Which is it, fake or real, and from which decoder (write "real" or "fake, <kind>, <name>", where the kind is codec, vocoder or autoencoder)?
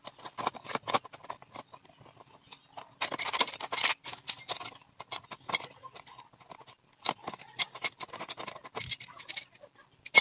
real